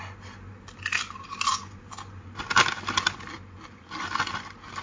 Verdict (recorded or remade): recorded